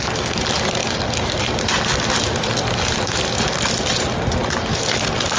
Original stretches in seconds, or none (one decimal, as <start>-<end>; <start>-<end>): 0.0-5.4